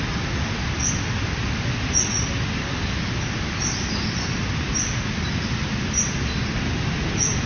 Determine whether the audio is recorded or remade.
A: recorded